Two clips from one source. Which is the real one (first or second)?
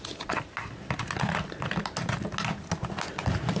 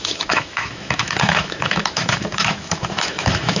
first